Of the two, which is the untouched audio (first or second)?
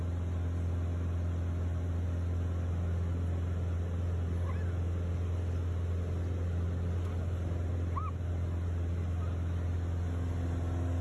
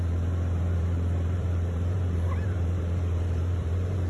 first